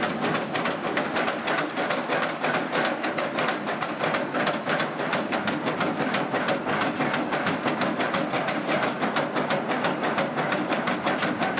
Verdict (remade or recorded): recorded